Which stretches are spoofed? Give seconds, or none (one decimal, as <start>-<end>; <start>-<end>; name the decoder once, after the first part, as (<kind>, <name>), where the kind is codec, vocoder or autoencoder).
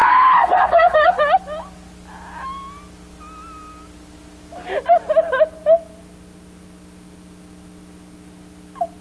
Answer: 0.0-1.2 (codec, SNAC)